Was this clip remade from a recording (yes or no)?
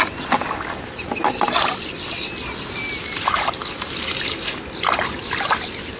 no